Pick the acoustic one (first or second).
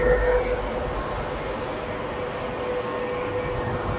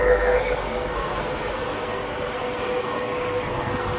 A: first